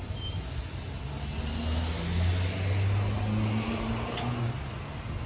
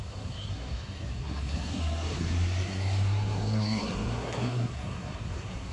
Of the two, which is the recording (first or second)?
first